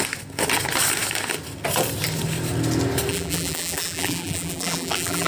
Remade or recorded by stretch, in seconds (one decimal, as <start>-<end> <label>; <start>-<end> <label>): 0.0-3.1 recorded; 3.1-5.3 remade